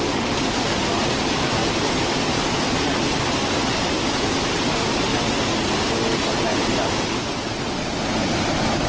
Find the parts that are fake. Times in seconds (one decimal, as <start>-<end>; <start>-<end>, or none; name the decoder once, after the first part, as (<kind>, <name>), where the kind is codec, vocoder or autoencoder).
none

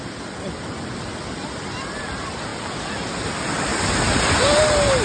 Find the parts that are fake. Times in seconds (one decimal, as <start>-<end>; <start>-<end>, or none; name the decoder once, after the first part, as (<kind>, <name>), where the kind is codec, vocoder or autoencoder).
none

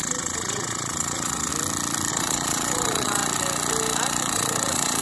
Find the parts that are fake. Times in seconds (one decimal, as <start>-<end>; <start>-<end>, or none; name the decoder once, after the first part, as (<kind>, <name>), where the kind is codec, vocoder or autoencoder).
0.0-1.5 (vocoder, Vocos); 2.1-3.2; 4.2-5.0

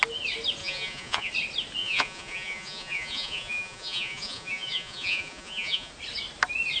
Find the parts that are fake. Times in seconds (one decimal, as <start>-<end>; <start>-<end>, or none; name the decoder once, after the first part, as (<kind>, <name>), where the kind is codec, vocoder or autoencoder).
0.6-1.3 (vocoder, Vocos); 1.8-5.9

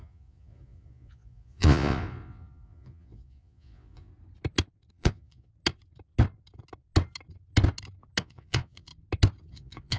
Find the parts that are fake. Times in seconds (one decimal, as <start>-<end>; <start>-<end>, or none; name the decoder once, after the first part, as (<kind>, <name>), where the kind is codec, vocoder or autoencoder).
0.0-4.1 (vocoder, Vocos); 4.9-5.5; 8.2-8.9; 9.5-10.0

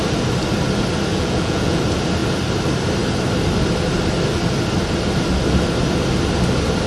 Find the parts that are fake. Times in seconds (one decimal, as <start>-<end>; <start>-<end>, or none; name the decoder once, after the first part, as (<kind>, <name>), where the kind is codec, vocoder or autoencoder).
1.1-1.8 (vocoder, Vocos)